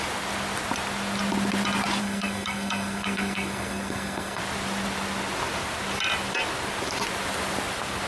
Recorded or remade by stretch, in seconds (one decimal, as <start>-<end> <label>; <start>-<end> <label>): 0.0-2.0 recorded; 2.0-4.4 remade; 4.4-8.1 recorded